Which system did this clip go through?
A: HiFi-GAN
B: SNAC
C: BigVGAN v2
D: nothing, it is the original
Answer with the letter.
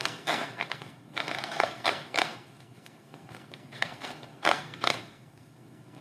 B